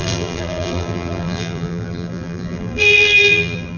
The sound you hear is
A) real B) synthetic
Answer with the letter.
B